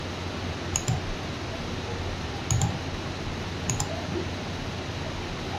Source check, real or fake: real